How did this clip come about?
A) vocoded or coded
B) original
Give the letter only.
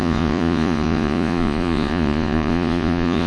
A